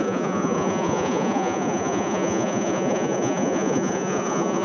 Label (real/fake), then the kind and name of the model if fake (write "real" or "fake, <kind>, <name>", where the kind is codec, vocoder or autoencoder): fake, vocoder, Vocos